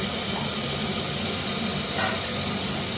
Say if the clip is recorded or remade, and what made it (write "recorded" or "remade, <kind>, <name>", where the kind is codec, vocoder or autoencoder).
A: recorded